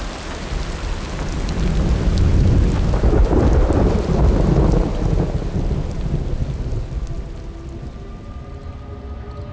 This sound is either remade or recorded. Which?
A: recorded